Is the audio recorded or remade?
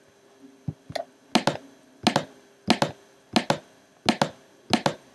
recorded